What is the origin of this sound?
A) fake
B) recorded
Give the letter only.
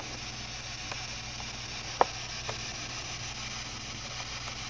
B